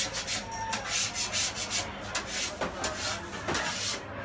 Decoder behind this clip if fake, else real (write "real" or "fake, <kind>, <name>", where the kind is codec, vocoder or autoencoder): real